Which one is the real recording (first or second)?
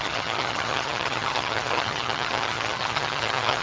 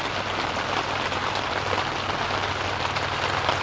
second